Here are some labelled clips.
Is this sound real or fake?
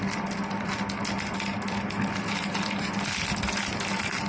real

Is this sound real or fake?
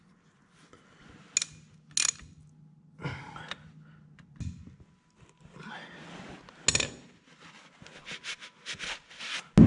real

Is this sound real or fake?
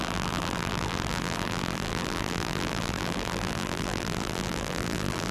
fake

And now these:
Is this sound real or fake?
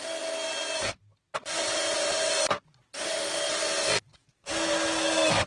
real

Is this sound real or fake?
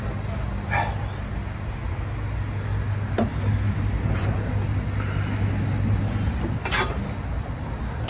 real